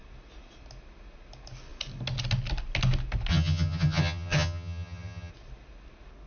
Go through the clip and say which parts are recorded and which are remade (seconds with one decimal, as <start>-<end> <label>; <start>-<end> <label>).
0.0-3.3 recorded; 3.3-5.3 remade; 5.3-6.3 recorded